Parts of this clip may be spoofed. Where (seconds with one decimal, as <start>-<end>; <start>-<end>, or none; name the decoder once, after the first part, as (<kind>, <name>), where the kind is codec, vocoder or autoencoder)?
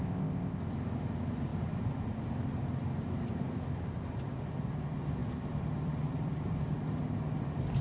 0.0-0.6 (codec, ZipCodec)